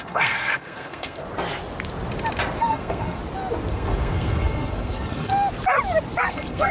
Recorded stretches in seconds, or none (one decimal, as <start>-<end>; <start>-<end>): 1.2-2.6; 3.2-3.7; 5.3-6.2